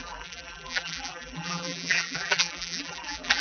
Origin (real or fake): fake